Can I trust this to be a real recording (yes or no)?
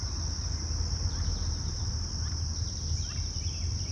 yes